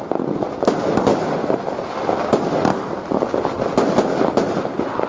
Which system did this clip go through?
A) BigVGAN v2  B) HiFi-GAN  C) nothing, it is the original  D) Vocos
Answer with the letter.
C